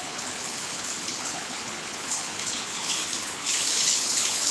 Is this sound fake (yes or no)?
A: yes